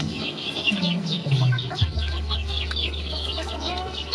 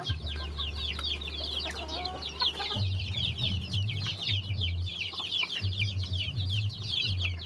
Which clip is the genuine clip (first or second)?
second